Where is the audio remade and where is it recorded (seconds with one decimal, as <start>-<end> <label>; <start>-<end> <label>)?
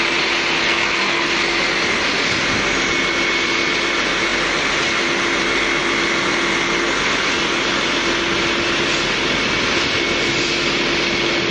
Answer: 0.0-0.6 recorded; 0.6-1.3 remade; 1.3-11.5 recorded